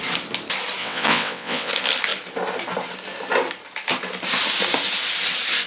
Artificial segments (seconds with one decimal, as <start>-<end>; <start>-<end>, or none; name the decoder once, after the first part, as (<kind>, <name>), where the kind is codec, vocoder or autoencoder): 0.8-1.7 (vocoder, WaveNeXt)